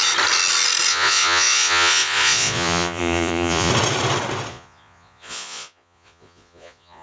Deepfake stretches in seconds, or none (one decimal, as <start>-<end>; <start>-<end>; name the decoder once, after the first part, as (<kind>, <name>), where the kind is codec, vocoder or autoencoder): 0.9-3.7 (vocoder, Vocos); 4.5-7.0